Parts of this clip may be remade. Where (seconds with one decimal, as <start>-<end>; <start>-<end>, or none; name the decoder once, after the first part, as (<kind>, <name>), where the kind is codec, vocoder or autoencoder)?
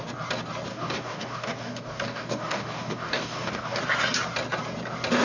0.7-3.8 (codec, DAC)